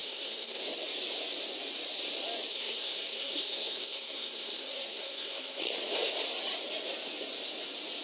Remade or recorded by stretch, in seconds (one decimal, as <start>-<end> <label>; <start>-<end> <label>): 0.0-0.6 remade; 0.6-2.5 recorded; 2.5-5.6 remade; 5.6-8.0 recorded